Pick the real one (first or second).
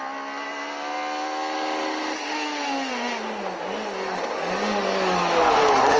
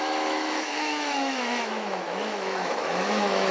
first